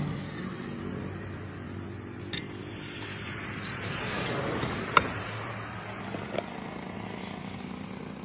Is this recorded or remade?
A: recorded